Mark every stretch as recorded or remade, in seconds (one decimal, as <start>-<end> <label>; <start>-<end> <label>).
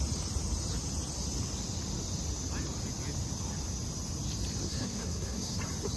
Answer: 0.0-4.6 recorded; 4.6-5.6 remade; 5.6-6.0 recorded